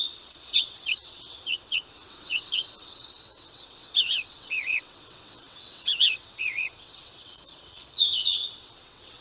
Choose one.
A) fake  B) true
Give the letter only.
A